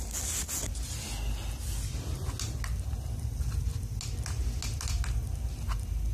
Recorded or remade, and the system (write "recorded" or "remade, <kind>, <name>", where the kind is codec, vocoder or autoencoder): recorded